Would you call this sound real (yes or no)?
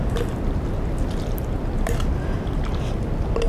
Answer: yes